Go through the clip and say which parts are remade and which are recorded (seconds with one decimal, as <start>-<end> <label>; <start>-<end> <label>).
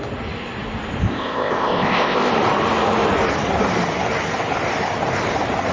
0.0-1.0 recorded; 1.0-2.3 remade; 2.3-5.7 recorded